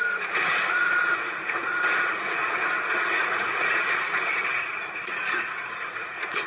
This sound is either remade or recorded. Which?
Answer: remade